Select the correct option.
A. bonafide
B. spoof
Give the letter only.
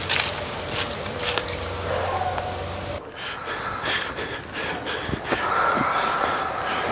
A